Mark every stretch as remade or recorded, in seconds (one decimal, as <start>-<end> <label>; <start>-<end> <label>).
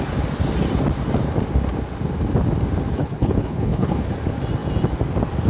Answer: 0.0-3.0 recorded; 3.0-4.1 remade; 4.1-5.5 recorded